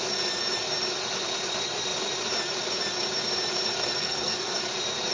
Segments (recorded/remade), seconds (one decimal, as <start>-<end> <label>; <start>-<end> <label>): 0.0-4.0 recorded; 4.0-4.6 remade; 4.6-5.1 recorded